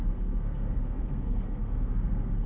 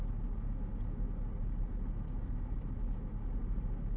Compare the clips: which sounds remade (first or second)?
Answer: first